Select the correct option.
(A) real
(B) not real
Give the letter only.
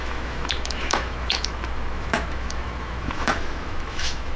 B